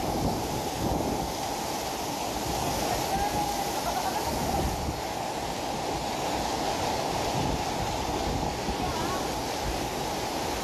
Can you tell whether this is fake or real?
real